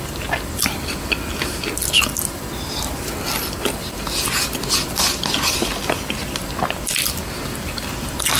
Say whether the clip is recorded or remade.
recorded